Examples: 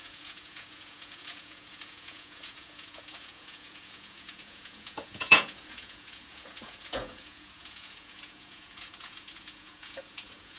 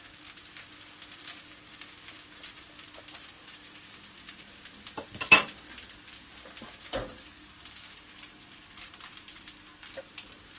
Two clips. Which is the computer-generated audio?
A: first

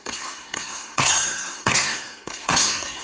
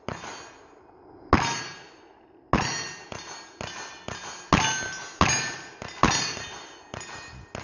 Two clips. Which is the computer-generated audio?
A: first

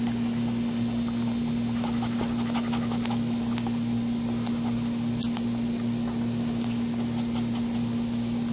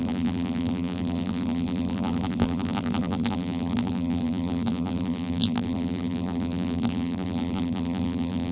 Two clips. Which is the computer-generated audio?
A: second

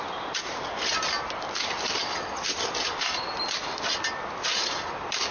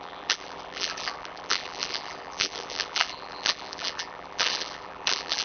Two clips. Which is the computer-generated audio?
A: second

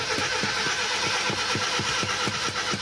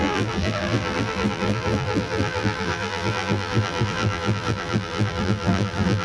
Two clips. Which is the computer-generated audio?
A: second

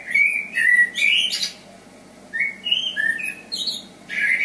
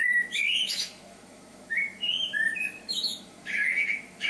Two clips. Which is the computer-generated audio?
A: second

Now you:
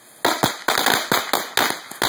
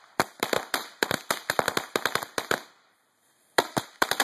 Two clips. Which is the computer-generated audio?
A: second